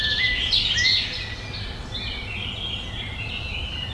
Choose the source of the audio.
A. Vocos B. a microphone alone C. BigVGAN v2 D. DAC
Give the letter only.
B